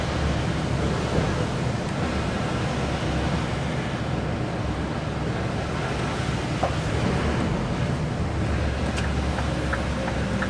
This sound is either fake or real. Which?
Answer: real